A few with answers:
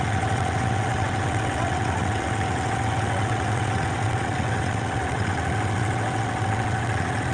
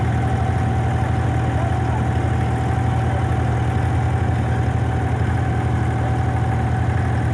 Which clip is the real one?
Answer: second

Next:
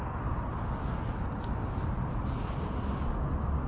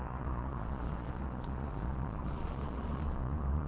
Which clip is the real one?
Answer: first